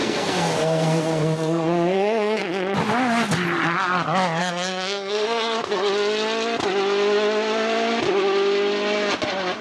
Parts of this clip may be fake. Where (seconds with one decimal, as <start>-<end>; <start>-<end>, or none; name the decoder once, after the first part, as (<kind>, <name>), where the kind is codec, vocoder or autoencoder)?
0.0-2.4 (codec, SNAC); 4.4-5.9